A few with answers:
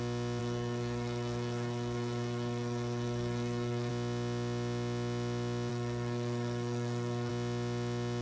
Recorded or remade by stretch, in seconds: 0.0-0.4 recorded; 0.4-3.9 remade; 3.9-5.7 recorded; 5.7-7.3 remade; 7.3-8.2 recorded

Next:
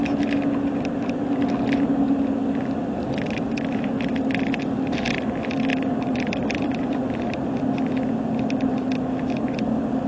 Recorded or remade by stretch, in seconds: 0.0-5.7 recorded; 5.7-6.7 remade; 6.7-10.1 recorded